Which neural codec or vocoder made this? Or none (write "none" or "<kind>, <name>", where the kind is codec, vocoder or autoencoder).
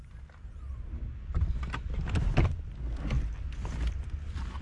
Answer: none